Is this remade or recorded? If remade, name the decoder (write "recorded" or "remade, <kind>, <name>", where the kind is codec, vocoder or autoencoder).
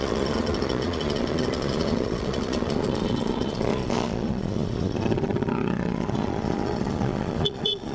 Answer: remade, vocoder, Vocos